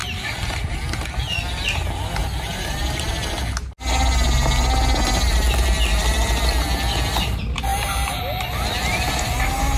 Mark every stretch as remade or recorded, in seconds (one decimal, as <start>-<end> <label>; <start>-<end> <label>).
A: 0.0-0.8 remade; 0.8-2.2 recorded; 2.2-3.1 remade; 3.1-9.8 recorded